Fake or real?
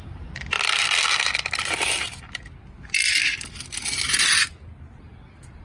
real